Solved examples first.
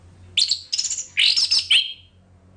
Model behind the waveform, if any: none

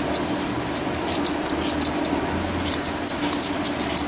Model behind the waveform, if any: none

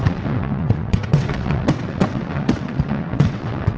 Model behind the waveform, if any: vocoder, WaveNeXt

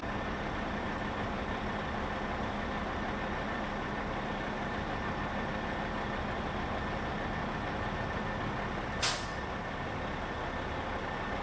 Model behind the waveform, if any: none